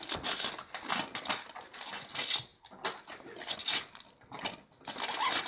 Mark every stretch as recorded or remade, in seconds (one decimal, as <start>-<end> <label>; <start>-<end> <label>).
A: 0.0-5.5 recorded